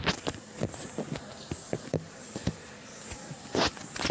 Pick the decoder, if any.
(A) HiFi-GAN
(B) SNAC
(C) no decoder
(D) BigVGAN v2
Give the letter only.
C